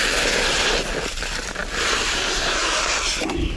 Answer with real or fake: real